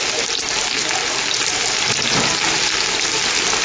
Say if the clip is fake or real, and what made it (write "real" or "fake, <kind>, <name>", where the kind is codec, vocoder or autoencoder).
real